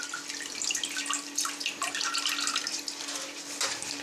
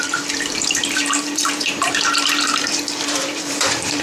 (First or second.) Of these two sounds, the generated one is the second